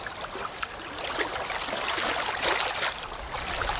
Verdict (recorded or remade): recorded